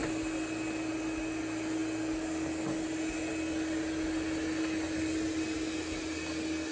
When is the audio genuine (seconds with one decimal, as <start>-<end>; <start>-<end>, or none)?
0.0-6.7